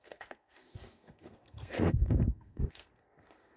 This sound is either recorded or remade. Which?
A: remade